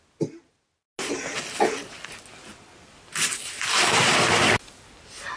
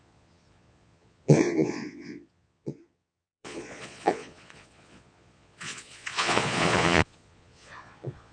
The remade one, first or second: second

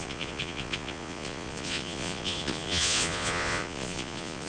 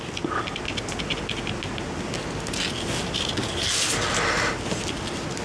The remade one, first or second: first